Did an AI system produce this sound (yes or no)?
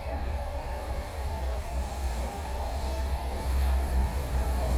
yes